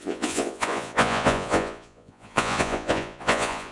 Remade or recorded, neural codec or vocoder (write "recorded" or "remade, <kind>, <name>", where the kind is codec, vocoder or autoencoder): remade, vocoder, Vocos